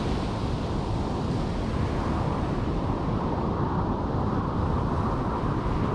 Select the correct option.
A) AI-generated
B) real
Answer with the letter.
B